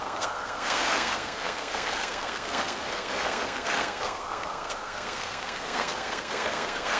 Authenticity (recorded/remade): remade